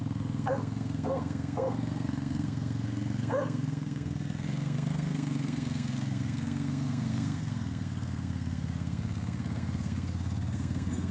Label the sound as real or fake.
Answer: fake